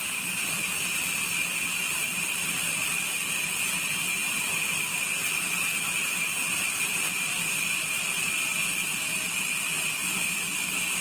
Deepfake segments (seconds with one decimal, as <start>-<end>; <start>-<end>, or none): 2.1-3.0; 4.2-5.0